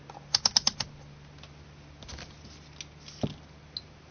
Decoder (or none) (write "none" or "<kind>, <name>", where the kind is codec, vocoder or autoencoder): none